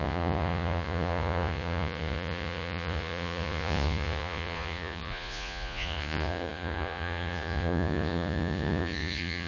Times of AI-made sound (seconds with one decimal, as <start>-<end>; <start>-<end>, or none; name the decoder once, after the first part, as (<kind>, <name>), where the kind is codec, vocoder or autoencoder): 0.0-9.5 (vocoder, Vocos)